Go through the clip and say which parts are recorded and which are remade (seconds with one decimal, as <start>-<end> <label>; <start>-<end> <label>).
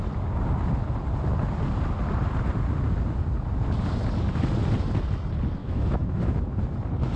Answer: 0.0-5.6 recorded; 5.6-6.4 remade; 6.4-7.2 recorded